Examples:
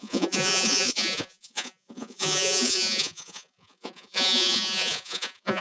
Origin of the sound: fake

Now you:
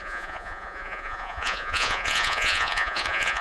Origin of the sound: fake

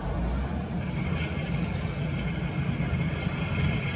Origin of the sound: real